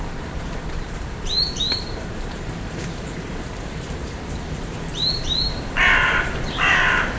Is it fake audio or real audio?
fake